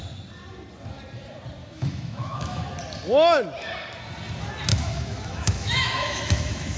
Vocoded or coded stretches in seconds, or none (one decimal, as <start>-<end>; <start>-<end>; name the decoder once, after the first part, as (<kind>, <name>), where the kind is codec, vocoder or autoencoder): 1.6-2.6 (autoencoder, DAC-VAE); 4.7-6.8